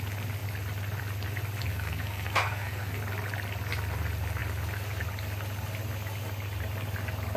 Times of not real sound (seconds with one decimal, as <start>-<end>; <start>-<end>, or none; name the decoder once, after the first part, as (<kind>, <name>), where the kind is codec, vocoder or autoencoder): 1.7-3.0 (codec, SNAC)